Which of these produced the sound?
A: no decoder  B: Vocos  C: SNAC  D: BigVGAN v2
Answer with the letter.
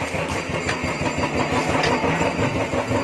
A